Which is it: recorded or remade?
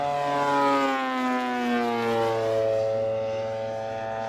recorded